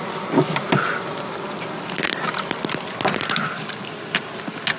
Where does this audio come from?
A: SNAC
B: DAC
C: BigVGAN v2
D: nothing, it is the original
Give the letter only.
C